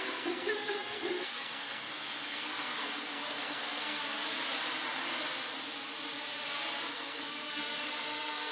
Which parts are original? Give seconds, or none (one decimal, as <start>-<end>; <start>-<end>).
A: 4.0-6.9